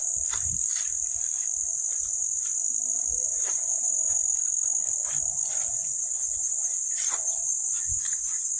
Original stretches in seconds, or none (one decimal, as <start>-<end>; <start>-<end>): 0.0-3.3; 4.8-8.6